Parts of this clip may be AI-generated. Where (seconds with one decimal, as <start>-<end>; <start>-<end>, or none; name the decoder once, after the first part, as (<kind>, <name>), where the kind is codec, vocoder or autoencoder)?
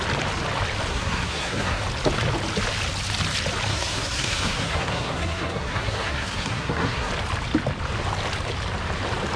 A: 0.9-1.8 (codec, SNAC); 3.7-7.1